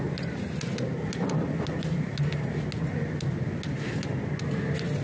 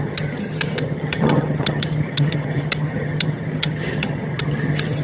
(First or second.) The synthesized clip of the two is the second